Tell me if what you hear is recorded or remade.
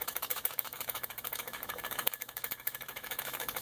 remade